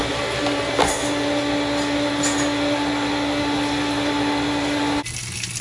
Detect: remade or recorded recorded